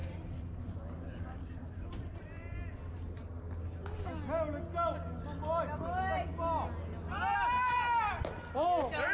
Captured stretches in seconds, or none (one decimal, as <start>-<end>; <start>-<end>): 2.2-9.1